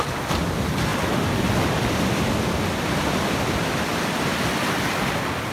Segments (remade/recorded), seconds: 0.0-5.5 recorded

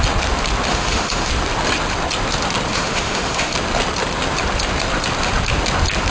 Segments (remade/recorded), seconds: 0.0-0.7 recorded; 0.7-1.3 remade; 1.3-2.7 recorded; 2.7-3.5 remade; 3.5-6.1 recorded

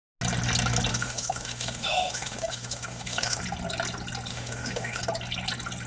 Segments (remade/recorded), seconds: 0.0-0.9 recorded; 0.9-3.4 remade; 3.4-4.3 recorded; 4.3-5.0 remade; 5.0-5.9 recorded

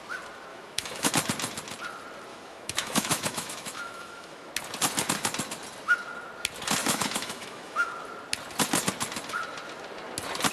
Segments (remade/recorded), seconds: 0.0-0.5 recorded; 0.5-1.1 remade; 1.1-2.3 recorded; 2.3-4.5 remade; 4.5-6.8 recorded; 6.8-7.9 remade; 7.9-10.5 recorded